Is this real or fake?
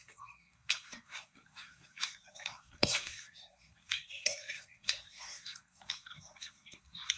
fake